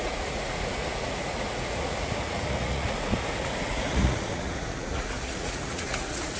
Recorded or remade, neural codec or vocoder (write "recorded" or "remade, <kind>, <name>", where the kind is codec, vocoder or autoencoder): remade, vocoder, Vocos